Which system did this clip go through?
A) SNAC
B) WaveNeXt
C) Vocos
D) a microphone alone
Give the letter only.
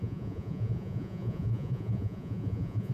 C